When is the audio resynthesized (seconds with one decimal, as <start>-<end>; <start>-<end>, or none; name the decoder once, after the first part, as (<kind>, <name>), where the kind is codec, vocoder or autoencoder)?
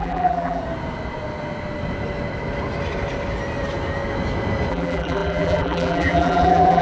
0.0-0.6 (vocoder, BigVGAN v2); 4.7-6.8